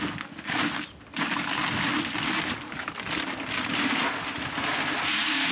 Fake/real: real